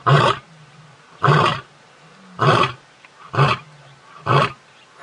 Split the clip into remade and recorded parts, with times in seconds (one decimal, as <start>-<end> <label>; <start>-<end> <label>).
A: 0.0-5.0 recorded